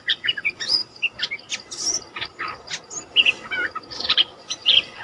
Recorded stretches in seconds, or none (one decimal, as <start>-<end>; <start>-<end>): 0.8-3.8